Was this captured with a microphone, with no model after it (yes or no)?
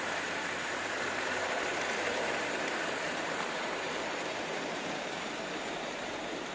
no